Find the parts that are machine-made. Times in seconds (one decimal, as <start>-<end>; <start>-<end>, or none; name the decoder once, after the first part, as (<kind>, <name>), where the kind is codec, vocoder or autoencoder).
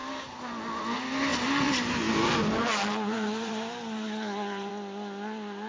0.0-0.8 (vocoder, BigVGAN v2); 1.3-4.7